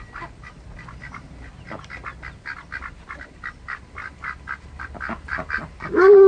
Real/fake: real